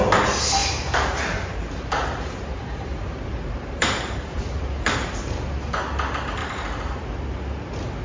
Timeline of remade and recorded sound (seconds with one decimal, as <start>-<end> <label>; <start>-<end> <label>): 0.0-0.6 recorded; 0.6-4.6 remade; 4.6-6.4 recorded; 6.4-7.0 remade; 7.0-8.0 recorded